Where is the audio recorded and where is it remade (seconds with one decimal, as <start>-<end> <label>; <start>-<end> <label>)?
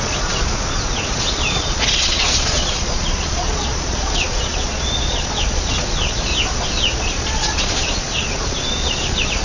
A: 0.0-6.3 remade; 6.3-7.0 recorded; 7.0-9.4 remade